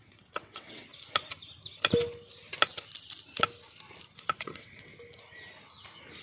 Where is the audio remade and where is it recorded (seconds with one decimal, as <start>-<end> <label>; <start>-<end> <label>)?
0.0-0.9 remade; 0.9-4.4 recorded; 4.4-4.9 remade; 4.9-6.2 recorded